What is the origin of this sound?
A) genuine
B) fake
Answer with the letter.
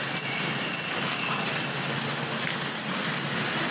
A